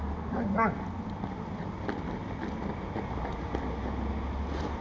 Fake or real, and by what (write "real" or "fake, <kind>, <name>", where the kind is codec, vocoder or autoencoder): real